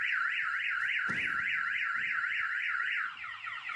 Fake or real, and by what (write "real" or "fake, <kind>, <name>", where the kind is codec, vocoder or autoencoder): real